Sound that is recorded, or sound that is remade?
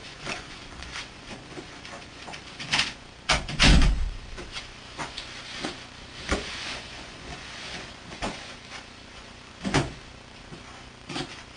remade